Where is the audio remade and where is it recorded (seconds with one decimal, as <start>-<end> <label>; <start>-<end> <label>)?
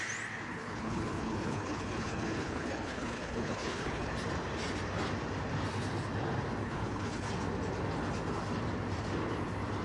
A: 0.0-0.5 recorded; 0.5-4.1 remade; 4.1-6.6 recorded; 6.6-7.3 remade; 7.3-9.8 recorded